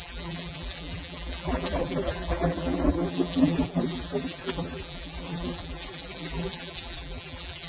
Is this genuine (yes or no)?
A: no